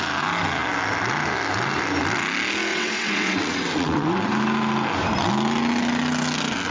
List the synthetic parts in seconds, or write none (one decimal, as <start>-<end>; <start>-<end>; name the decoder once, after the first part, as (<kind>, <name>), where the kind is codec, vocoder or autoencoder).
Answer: 2.7-4.3 (vocoder, WaveNeXt)